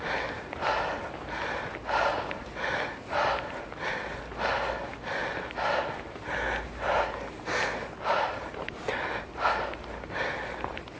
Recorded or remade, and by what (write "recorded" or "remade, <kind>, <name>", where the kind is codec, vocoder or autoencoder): recorded